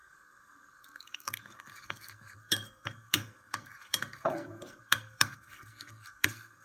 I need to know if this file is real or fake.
fake